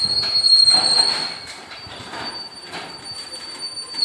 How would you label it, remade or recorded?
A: remade